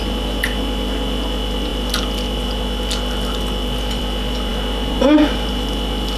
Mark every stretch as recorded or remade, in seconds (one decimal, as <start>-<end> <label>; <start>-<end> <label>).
0.0-6.2 recorded